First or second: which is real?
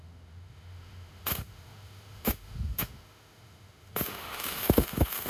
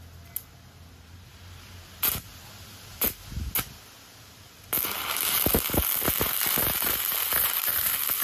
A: second